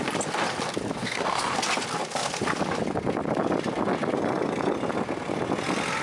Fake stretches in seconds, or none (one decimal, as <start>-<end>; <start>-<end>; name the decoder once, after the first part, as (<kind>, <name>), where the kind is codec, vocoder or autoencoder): 1.0-1.5 (codec, SNAC)